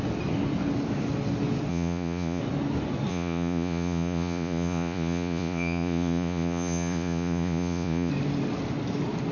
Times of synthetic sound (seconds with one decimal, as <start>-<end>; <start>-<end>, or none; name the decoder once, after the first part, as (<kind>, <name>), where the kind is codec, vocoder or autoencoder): 1.7-2.4 (vocoder, Vocos); 3.1-8.1